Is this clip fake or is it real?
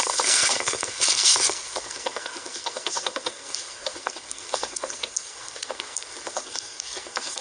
fake